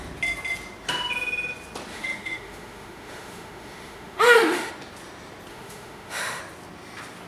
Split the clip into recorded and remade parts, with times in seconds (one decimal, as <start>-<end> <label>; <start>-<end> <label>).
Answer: 0.0-1.9 recorded; 1.9-4.7 remade; 4.7-5.5 recorded; 5.5-6.4 remade; 6.4-7.3 recorded